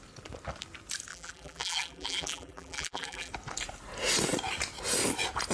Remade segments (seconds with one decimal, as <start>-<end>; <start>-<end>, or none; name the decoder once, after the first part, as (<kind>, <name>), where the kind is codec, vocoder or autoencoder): 1.1-3.3 (vocoder, BigVGAN v2)